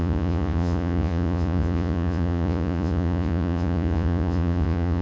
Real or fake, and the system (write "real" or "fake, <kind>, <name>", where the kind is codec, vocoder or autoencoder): fake, vocoder, Vocos